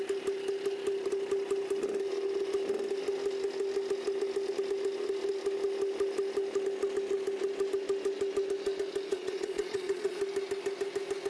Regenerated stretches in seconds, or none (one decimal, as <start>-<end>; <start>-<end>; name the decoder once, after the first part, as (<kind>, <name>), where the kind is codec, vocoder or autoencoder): 9.1-10.2 (vocoder, Vocos)

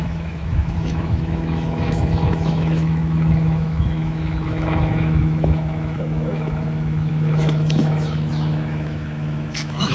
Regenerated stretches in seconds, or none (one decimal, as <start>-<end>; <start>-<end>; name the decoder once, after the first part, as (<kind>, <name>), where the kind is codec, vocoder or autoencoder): 0.0-9.9 (autoencoder, DAC-VAE)

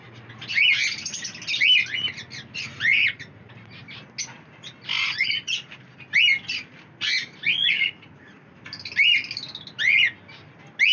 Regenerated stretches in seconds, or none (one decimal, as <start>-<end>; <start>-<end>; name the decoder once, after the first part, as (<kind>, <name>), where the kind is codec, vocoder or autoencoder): 2.9-3.8 (vocoder, Vocos); 5.0-5.7; 7.5-8.5